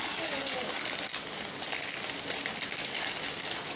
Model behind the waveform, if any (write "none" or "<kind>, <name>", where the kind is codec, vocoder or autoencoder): none